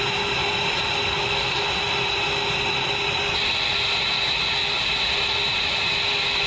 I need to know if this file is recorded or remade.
recorded